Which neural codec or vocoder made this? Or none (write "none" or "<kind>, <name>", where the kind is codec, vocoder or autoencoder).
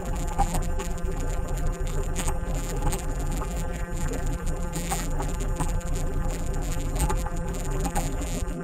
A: vocoder, BigVGAN v2